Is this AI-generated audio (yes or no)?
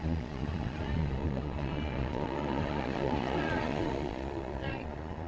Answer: yes